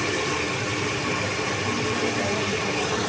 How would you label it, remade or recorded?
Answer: recorded